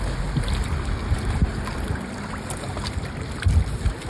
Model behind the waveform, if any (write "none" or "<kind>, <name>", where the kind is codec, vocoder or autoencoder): none